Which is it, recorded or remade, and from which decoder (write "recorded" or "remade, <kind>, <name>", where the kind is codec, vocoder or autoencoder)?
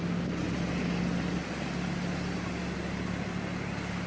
recorded